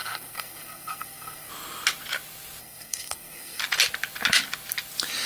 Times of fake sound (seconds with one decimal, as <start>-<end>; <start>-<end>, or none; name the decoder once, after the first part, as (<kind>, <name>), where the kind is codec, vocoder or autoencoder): 0.0-1.5 (codec, SNAC); 2.6-3.6